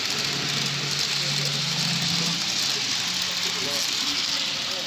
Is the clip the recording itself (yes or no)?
yes